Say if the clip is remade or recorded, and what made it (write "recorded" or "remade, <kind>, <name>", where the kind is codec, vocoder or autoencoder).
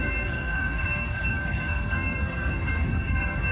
remade, codec, SNAC